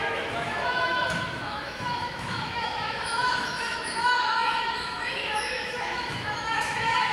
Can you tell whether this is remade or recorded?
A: remade